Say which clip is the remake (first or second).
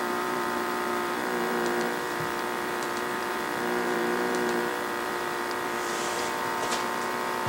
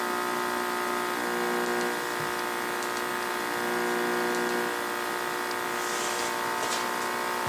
first